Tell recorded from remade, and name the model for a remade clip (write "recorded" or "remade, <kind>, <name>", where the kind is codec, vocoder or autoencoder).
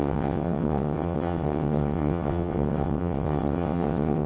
remade, vocoder, WaveNeXt